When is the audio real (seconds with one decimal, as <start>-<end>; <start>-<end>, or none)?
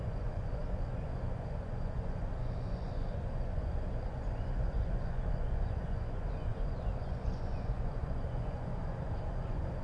none